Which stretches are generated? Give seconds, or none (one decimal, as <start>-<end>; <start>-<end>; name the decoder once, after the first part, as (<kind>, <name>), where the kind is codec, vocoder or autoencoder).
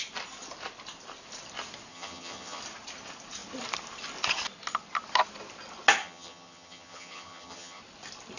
1.9-2.6 (vocoder, HiFi-GAN); 6.0-7.8